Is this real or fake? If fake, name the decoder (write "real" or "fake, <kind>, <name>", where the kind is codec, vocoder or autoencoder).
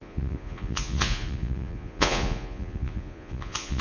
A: fake, vocoder, Vocos